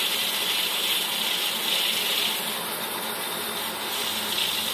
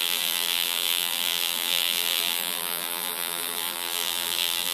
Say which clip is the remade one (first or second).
second